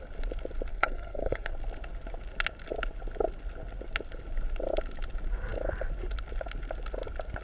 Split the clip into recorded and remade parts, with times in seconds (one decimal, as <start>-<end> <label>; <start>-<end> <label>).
0.0-0.7 recorded; 0.7-1.5 remade; 1.5-7.4 recorded